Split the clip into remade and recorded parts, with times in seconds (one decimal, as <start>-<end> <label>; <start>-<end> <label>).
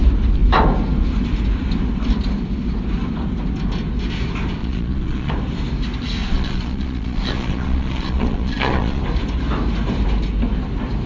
0.0-4.6 recorded; 4.6-5.3 remade; 5.3-6.2 recorded; 6.2-9.0 remade; 9.0-11.1 recorded